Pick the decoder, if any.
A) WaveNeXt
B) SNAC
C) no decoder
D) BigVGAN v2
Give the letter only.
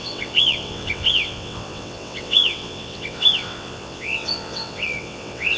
A